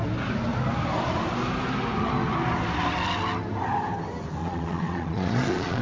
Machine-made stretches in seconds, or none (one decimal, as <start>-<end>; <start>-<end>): 4.4-5.8